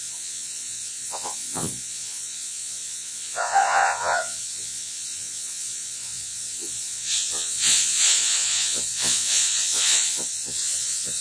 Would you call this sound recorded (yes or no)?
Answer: no